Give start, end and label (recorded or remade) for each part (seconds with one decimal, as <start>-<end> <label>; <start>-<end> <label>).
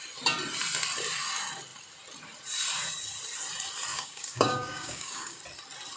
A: 0.0-3.9 recorded; 3.9-5.4 remade; 5.4-6.0 recorded